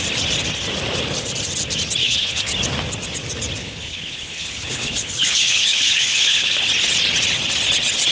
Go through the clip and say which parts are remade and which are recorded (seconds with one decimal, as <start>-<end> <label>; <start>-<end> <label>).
0.0-2.0 recorded; 2.0-2.5 remade; 2.5-3.6 recorded; 3.6-6.6 remade; 6.6-8.1 recorded